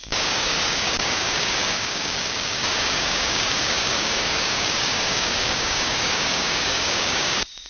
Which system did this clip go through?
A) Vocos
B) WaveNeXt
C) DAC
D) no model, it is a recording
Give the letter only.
C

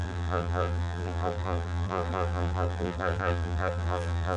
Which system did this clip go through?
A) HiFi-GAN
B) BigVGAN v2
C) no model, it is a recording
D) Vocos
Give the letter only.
B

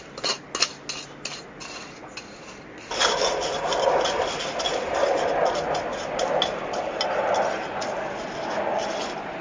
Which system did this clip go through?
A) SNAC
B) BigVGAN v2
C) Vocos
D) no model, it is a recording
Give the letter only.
D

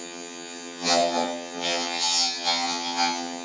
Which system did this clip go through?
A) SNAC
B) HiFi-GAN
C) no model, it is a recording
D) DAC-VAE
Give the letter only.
B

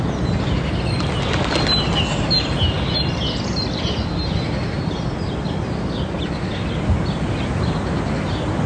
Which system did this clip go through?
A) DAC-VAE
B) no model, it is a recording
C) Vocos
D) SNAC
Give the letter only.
B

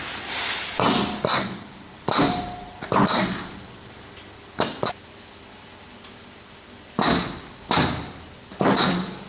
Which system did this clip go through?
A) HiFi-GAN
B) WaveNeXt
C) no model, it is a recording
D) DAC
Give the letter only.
C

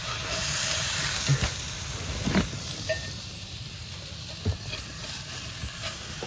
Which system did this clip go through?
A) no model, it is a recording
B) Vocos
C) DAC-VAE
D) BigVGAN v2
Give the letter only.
D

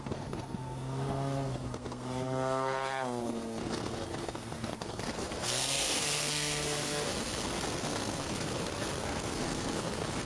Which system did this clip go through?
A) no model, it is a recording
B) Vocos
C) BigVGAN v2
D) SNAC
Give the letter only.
D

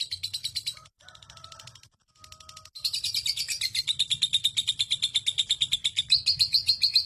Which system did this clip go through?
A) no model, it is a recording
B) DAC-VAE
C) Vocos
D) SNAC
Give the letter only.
A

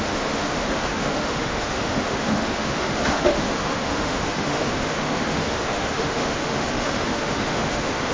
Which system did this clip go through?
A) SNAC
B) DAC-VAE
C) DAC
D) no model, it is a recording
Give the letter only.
B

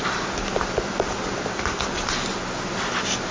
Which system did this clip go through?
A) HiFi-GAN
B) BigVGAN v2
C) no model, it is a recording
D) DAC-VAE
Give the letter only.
C